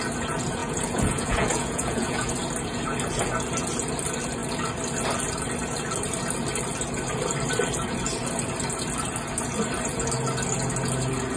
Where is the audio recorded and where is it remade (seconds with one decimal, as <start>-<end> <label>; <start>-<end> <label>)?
0.0-0.6 recorded; 0.6-2.3 remade; 2.3-11.4 recorded